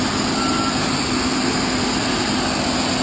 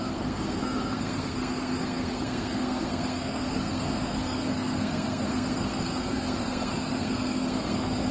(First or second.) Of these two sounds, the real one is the first